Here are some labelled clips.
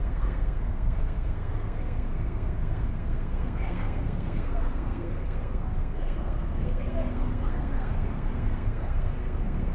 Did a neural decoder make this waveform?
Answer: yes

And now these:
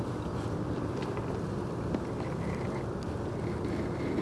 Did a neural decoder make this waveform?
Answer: no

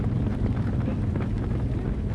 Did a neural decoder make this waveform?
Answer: no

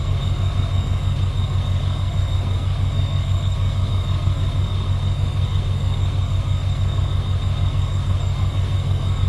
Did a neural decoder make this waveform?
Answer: yes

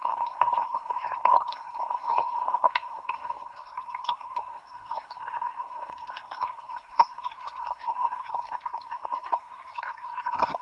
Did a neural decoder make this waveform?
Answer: yes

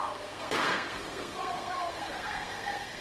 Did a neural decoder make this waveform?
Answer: yes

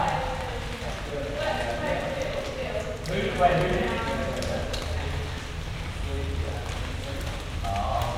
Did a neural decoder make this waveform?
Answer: no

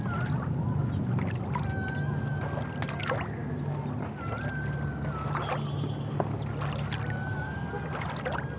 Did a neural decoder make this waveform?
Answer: no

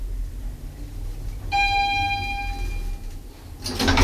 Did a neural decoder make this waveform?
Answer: no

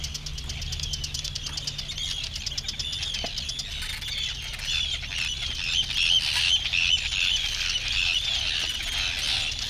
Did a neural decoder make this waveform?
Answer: no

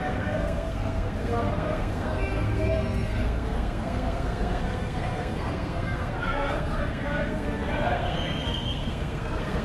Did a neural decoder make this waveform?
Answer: yes